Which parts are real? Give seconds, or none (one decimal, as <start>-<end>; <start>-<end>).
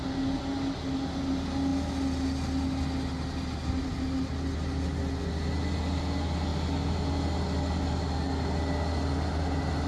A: 0.0-9.9